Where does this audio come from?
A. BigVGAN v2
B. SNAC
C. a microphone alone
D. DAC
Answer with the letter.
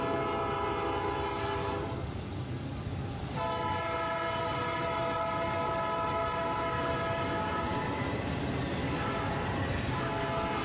C